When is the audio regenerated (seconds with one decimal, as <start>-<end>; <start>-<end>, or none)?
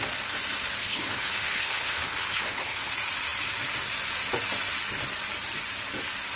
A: 0.8-2.9